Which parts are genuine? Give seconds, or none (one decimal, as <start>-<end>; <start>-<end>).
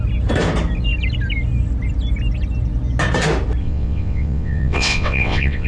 0.0-3.6